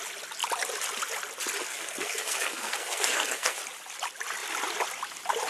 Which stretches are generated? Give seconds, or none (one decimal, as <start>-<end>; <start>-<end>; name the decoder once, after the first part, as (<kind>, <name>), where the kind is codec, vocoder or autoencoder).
1.6-3.6 (codec, SNAC)